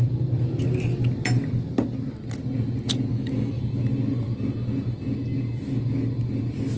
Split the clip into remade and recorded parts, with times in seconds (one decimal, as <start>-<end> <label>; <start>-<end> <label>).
0.0-3.1 recorded; 3.1-3.6 remade; 3.6-6.8 recorded